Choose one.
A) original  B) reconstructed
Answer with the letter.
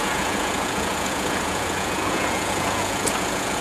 B